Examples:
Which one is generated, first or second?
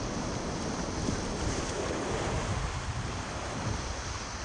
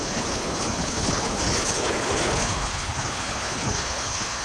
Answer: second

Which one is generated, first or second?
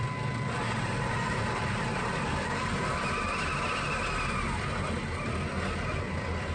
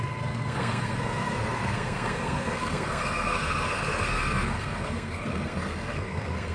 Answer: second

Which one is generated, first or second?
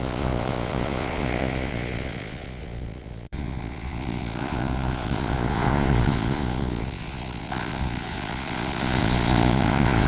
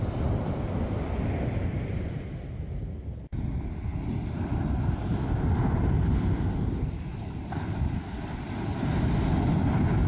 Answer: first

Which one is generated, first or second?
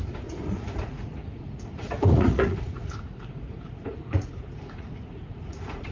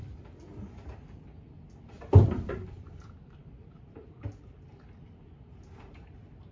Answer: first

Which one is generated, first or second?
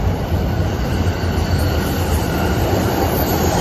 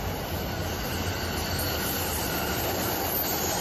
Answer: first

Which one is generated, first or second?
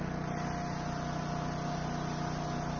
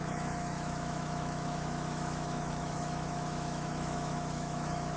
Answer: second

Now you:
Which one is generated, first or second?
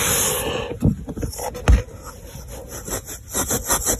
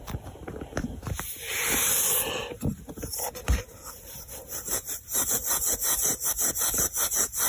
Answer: second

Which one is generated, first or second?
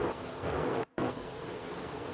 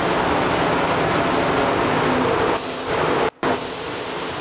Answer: first